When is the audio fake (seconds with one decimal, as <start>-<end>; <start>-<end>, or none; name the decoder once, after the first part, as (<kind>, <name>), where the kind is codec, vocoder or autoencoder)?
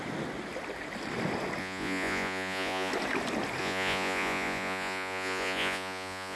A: 1.6-2.9 (vocoder, Vocos); 3.6-6.4